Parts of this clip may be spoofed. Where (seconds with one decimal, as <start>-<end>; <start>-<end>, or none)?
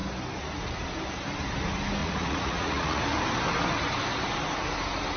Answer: 2.0-3.0